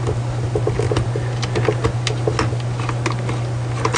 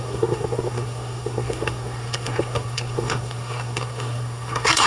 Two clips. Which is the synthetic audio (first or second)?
second